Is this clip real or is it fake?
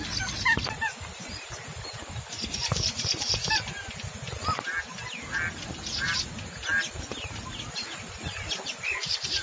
real